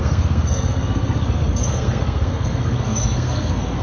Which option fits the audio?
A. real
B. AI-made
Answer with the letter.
B